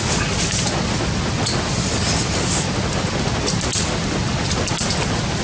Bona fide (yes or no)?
yes